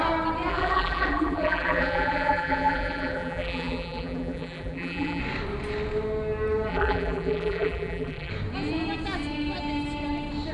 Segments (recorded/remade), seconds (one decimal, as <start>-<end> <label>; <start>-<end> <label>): 0.0-0.5 recorded; 0.5-5.2 remade; 5.2-6.7 recorded; 6.7-8.3 remade; 8.3-10.5 recorded